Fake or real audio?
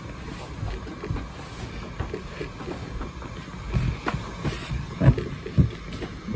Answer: real